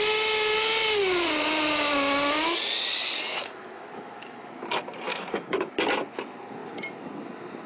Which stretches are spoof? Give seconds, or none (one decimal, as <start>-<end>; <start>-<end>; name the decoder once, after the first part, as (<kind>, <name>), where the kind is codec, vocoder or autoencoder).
3.3-4.6 (autoencoder, DAC-VAE); 5.1-5.7